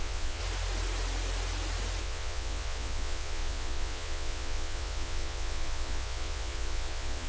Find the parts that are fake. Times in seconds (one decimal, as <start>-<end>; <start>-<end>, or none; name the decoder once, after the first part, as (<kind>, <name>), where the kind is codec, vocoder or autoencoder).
0.0-0.4 (vocoder, Vocos); 2.0-7.3